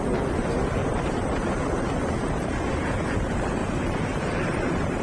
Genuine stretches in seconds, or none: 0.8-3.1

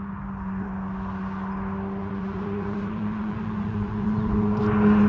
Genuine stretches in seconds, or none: 0.0-2.0; 4.6-5.1

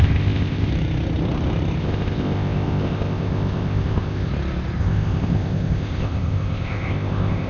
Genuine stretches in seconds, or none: 0.7-1.8; 4.3-4.8

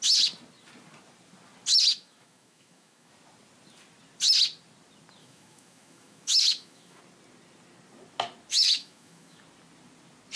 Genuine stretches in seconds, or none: 0.0-1.9; 3.1-5.2; 7.0-8.5; 9.4-10.4